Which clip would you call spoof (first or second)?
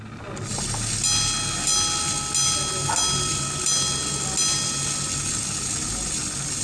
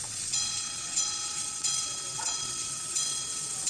second